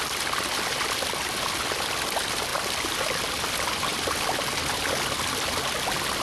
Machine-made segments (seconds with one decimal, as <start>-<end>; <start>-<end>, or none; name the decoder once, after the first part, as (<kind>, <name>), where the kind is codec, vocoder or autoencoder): none